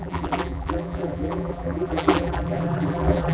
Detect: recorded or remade remade